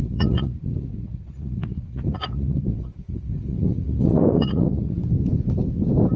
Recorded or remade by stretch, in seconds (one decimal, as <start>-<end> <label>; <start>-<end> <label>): 0.0-5.0 remade; 5.0-6.2 recorded

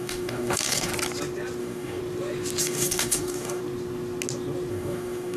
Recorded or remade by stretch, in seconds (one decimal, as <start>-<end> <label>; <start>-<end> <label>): 0.0-0.9 remade; 0.9-1.6 recorded; 1.6-2.0 remade; 2.0-2.6 recorded; 2.6-3.6 remade; 3.6-4.7 recorded; 4.7-5.4 remade

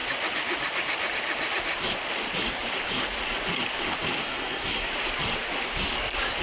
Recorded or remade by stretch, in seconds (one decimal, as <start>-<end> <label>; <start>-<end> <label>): 0.0-4.2 recorded; 4.2-4.9 remade; 4.9-6.4 recorded

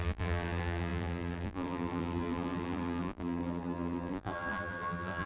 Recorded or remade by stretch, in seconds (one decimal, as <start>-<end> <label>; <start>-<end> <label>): 0.0-5.3 remade

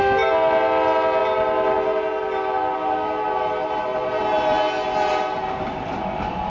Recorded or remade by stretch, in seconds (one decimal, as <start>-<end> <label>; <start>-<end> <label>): 0.0-6.5 recorded

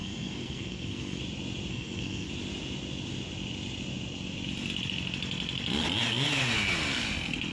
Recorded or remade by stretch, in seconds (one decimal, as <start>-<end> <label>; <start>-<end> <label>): 0.0-1.2 remade; 1.2-1.7 recorded; 1.7-2.3 remade; 2.3-7.5 recorded